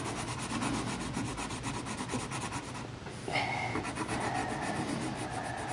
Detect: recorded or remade recorded